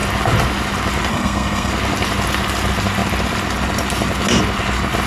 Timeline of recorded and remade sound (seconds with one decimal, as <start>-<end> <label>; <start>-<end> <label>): 0.0-1.1 recorded; 1.1-1.7 remade; 1.7-5.1 recorded